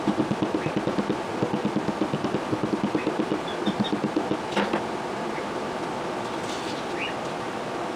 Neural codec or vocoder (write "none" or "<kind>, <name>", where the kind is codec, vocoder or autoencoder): none